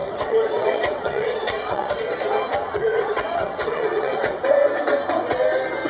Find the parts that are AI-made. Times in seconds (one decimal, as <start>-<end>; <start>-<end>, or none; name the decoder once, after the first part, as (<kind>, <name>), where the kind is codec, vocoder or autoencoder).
0.0-1.9 (vocoder, WaveNeXt); 2.6-4.4